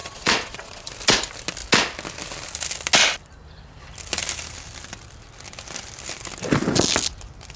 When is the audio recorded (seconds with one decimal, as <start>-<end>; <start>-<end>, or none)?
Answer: 0.9-7.6

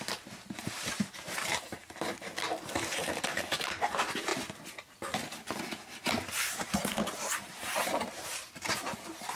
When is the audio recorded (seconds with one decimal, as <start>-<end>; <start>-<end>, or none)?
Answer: 4.3-6.3

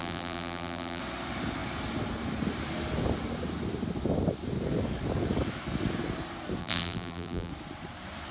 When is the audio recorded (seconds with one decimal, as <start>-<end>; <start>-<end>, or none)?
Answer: 1.0-6.6; 7.5-8.3

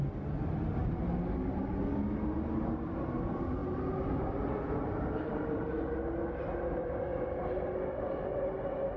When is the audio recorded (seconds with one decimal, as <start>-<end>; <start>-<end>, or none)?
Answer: 0.0-9.0